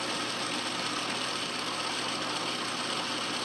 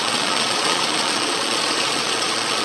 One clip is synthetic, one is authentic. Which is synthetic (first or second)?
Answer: second